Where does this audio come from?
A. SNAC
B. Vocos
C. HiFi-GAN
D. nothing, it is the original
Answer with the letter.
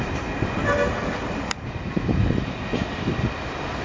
D